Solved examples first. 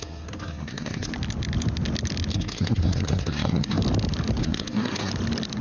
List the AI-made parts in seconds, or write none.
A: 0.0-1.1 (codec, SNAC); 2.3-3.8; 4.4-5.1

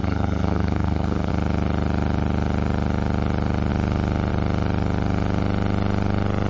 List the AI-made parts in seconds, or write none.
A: 0.0-1.3 (codec, SNAC)

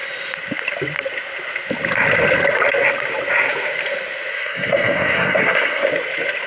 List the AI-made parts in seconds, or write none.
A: 4.3-5.9 (codec, SNAC)

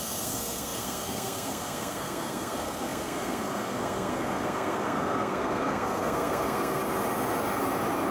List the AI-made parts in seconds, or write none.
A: 0.0-6.8 (codec, SNAC)